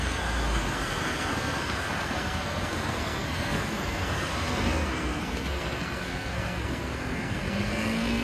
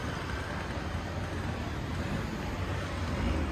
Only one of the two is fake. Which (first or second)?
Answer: first